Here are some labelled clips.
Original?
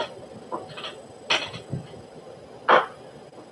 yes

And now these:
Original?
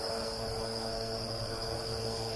no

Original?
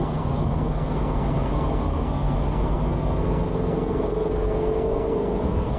no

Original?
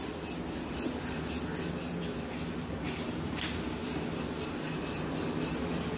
yes